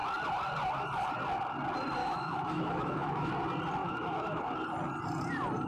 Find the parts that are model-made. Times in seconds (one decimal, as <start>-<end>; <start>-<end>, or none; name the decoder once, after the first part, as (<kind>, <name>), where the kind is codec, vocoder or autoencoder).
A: 2.0-3.3 (autoencoder, DAC-VAE); 3.8-4.4